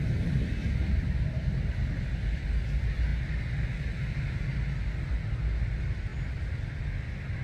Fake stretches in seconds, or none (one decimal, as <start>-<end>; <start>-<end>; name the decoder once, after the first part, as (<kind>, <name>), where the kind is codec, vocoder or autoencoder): none